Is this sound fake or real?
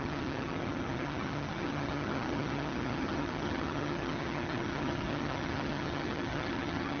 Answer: fake